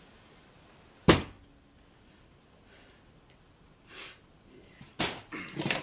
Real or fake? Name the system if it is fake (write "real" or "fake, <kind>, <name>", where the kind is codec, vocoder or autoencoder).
real